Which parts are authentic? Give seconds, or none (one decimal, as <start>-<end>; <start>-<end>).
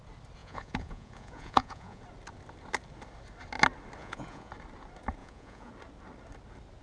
0.0-0.4; 2.0-4.0; 4.5-5.2; 5.7-6.8